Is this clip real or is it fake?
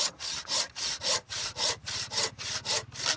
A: real